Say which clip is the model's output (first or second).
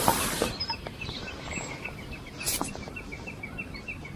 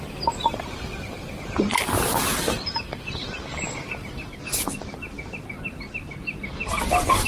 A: first